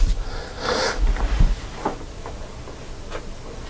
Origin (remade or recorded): recorded